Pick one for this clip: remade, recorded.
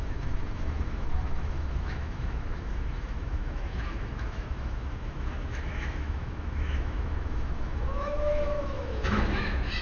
remade